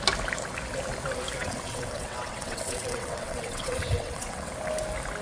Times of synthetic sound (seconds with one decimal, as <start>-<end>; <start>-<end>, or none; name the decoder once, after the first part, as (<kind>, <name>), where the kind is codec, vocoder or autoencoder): 1.4-4.5 (vocoder, WaveNeXt)

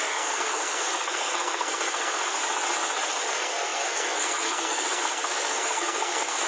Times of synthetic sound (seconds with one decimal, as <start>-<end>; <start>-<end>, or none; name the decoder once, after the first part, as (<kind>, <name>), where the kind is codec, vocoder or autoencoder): 0.0-2.4 (codec, SNAC); 3.3-6.5